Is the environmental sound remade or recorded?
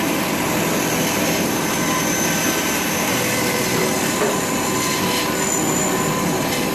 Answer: recorded